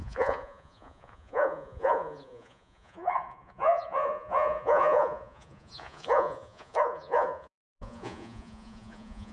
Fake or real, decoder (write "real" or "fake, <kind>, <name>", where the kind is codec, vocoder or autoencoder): fake, vocoder, Vocos